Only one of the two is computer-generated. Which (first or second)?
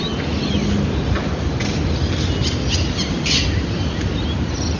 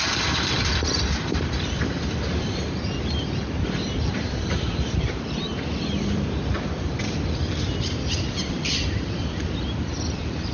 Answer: second